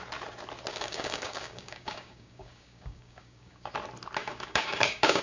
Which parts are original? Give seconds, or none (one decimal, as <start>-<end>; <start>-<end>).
0.0-0.7; 3.7-4.2